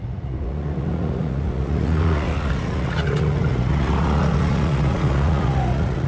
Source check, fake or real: fake